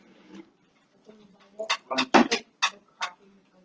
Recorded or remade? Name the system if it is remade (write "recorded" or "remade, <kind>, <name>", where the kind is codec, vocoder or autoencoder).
recorded